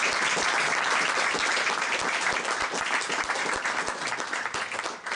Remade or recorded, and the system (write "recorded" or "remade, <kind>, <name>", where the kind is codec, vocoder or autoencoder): recorded